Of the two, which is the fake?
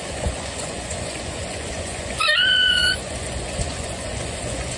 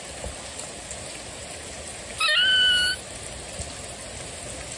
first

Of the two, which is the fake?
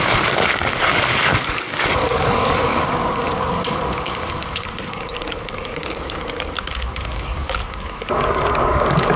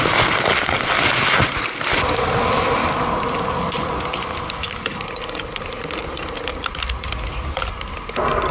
first